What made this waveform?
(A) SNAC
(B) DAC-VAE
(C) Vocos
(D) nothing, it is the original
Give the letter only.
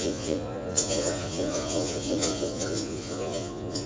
C